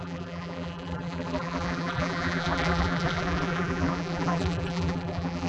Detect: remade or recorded remade